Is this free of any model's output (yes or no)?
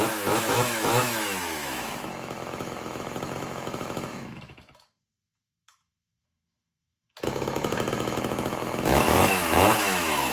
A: no